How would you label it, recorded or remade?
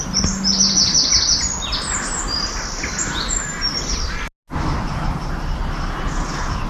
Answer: recorded